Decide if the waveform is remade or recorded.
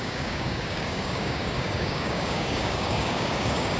remade